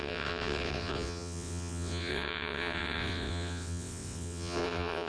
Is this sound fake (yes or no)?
yes